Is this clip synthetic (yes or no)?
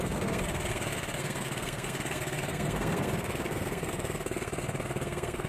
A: yes